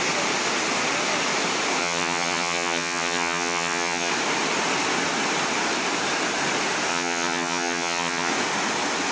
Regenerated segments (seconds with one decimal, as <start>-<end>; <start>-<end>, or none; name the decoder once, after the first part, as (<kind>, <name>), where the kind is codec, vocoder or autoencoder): 1.8-4.1 (vocoder, HiFi-GAN); 6.9-8.3